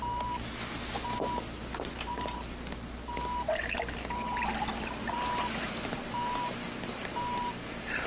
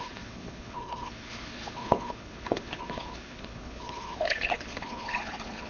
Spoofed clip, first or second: second